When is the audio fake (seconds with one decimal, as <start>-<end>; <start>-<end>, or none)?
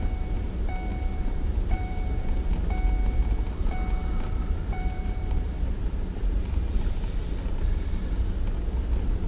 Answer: 0.9-2.2; 4.0-8.2